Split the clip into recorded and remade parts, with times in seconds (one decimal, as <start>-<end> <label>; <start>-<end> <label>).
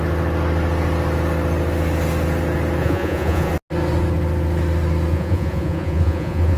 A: 0.0-2.8 recorded; 2.8-3.5 remade; 3.5-5.1 recorded; 5.1-6.6 remade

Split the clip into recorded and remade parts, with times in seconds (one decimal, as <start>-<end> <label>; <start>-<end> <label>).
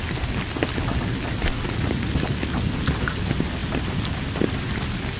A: 0.0-1.4 recorded; 1.4-2.1 remade; 2.1-5.2 recorded